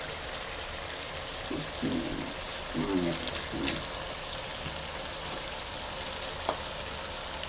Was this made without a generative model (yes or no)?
yes